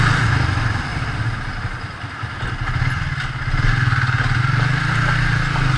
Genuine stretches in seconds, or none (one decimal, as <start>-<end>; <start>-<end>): 0.0-5.8